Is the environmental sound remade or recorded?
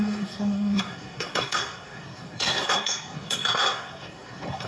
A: remade